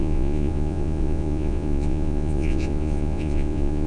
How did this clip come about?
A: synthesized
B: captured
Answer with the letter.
A